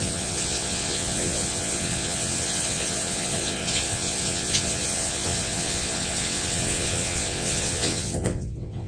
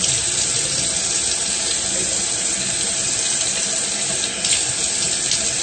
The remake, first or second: first